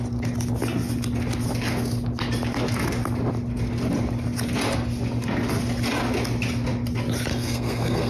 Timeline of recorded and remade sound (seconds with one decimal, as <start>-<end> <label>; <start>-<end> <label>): 0.0-7.3 recorded; 7.3-8.1 remade

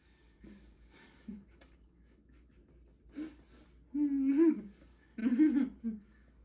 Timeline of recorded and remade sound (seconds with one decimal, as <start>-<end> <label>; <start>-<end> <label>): 0.0-2.6 remade; 2.6-4.5 recorded; 4.5-5.2 remade; 5.2-5.8 recorded; 5.8-6.4 remade

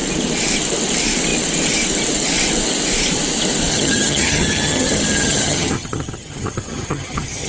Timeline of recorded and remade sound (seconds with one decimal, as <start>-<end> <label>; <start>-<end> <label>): 0.0-3.7 recorded; 3.7-7.5 remade

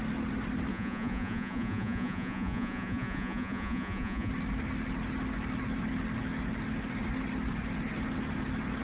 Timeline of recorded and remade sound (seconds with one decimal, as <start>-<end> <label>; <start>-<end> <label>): 0.0-0.7 recorded; 0.7-4.3 remade; 4.3-8.8 recorded